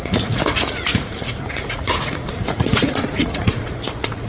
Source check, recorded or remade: remade